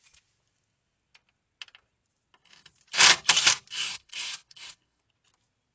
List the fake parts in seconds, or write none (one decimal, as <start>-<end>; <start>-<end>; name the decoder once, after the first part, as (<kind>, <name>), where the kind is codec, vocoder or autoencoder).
3.7-5.0 (codec, SNAC)